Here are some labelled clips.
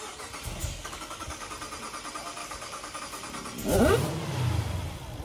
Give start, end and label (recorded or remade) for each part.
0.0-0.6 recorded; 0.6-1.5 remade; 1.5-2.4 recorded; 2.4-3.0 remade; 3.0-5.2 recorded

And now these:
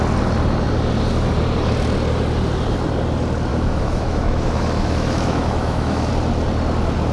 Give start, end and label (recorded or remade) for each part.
0.0-3.5 recorded; 3.5-6.1 remade; 6.1-7.1 recorded

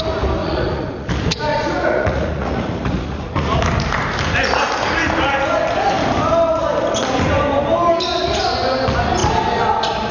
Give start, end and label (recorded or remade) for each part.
0.0-0.4 recorded; 0.4-1.1 remade; 1.1-1.5 recorded; 1.5-3.6 remade; 3.6-10.1 recorded

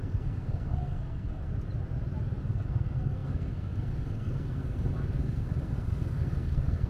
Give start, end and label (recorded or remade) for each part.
0.0-1.5 remade; 1.5-2.4 recorded; 2.4-6.9 remade

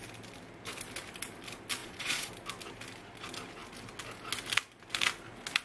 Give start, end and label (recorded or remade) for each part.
0.0-1.8 recorded; 1.8-2.3 remade; 2.3-5.6 recorded

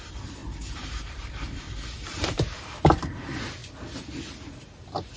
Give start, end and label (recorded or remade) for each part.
0.0-3.6 remade; 3.6-5.2 recorded

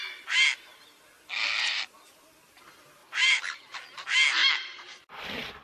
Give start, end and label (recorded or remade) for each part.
0.0-3.0 recorded; 3.0-3.8 remade; 3.8-4.4 recorded; 4.4-5.6 remade

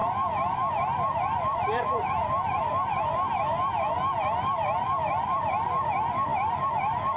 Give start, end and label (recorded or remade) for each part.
0.0-0.7 recorded; 0.7-6.3 remade; 6.3-7.2 recorded